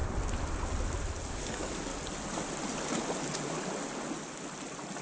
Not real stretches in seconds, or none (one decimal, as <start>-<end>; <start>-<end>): 1.3-1.9